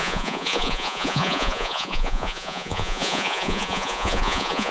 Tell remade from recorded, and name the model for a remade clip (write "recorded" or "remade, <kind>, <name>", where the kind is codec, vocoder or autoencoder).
remade, vocoder, Vocos